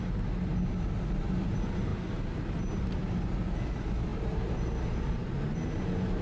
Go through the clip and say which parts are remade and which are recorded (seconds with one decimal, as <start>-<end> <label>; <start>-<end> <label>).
0.0-0.5 remade; 0.5-1.4 recorded; 1.4-1.9 remade; 1.9-2.8 recorded; 2.8-6.2 remade